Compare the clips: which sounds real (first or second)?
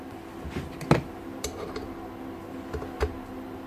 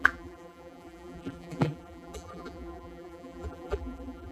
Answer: first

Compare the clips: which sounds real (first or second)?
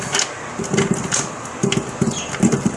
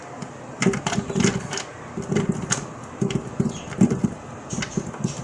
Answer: first